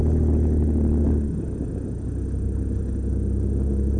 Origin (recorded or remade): recorded